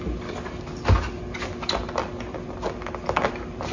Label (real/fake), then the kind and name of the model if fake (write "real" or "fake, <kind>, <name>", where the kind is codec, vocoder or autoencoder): real